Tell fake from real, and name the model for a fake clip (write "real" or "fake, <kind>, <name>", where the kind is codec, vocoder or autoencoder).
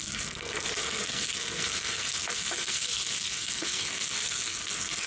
fake, codec, SNAC